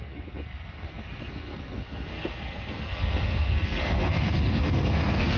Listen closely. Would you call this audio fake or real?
fake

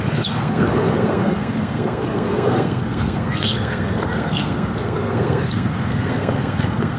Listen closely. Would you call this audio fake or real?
fake